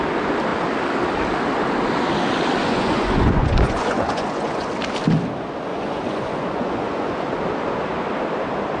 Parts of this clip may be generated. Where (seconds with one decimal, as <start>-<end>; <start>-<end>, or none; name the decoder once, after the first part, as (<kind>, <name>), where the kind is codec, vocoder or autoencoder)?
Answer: 2.6-4.7 (vocoder, Vocos); 5.7-7.4